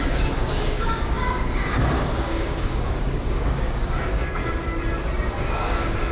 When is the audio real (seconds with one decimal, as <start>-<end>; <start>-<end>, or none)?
4.4-5.4